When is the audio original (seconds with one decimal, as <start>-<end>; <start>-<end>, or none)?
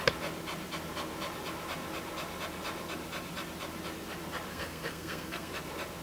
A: 0.0-4.5; 5.5-6.0